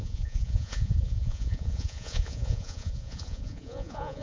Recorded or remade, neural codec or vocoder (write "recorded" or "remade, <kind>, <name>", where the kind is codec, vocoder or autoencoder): remade, vocoder, Vocos